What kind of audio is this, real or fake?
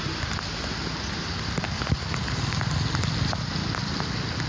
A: real